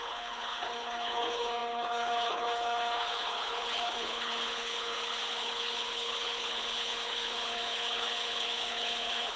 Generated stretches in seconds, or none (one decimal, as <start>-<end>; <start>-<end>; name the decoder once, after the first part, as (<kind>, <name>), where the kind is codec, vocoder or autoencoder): 0.0-9.4 (codec, HILCodec)